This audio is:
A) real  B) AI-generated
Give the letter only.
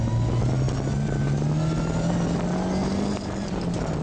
A